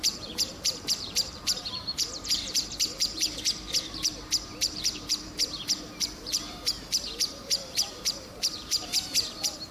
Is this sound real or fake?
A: fake